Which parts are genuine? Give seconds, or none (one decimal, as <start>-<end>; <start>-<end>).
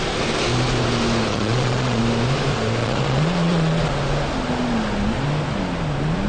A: 0.0-1.3; 2.0-2.8; 3.9-6.3